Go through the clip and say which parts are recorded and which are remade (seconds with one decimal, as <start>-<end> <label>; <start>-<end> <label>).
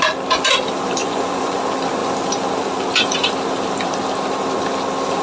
0.0-1.0 recorded; 1.0-1.6 remade; 1.6-5.2 recorded